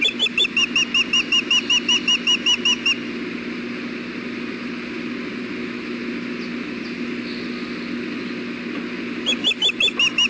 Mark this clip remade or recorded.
recorded